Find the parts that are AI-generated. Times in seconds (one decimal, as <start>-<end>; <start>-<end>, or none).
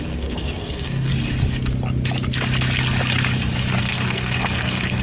0.0-1.1; 3.8-5.0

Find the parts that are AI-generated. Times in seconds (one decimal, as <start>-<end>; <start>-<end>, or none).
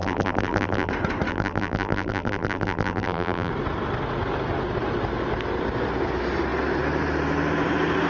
0.0-0.9; 1.3-3.5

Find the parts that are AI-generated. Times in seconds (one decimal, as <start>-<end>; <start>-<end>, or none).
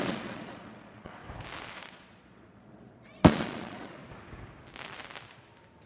0.0-1.2; 1.7-4.0